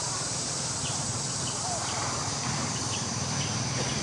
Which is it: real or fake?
fake